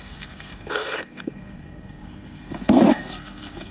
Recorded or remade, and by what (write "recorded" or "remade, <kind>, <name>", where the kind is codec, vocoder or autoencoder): remade, codec, SNAC